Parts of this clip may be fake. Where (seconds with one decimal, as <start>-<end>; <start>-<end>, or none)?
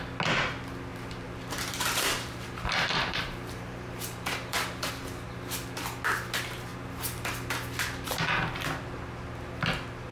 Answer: 0.9-4.9